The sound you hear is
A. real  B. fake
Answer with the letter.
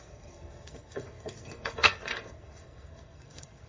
B